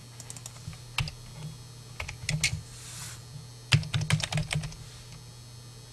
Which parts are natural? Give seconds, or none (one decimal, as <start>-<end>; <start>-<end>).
0.0-5.9